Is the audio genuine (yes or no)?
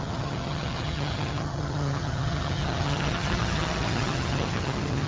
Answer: no